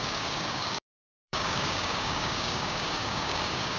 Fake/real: fake